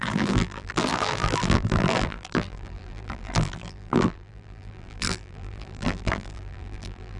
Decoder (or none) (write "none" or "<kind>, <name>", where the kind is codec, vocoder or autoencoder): vocoder, BigVGAN v2